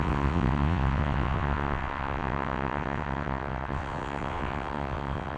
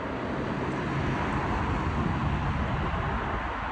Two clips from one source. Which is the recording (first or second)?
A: second